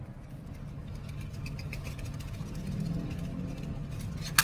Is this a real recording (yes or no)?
yes